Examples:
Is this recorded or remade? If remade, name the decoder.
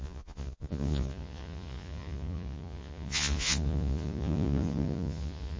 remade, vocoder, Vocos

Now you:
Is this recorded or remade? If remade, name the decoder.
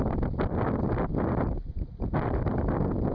recorded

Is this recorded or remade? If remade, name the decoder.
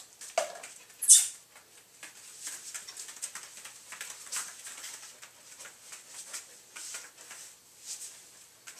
recorded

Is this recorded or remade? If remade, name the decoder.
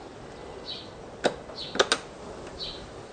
recorded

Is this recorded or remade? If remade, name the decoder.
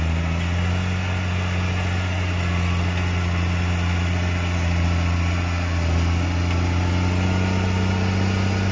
recorded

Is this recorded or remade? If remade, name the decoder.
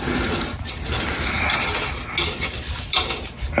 recorded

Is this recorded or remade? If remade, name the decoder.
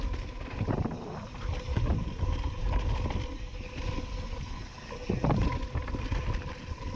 recorded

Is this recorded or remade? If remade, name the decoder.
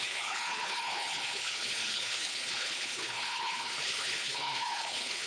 remade, codec, HILCodec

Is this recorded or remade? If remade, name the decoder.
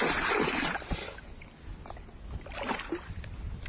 recorded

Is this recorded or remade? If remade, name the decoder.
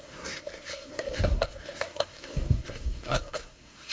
remade, codec, SNAC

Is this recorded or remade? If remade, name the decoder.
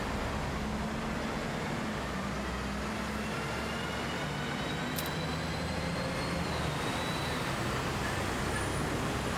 recorded